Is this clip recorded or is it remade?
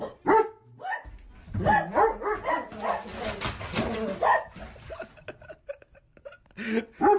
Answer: recorded